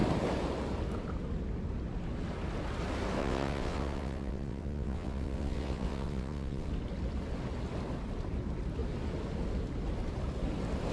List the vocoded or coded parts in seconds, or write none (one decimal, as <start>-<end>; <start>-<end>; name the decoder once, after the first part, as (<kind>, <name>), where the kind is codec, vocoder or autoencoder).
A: 3.2-6.7 (vocoder, WaveNeXt)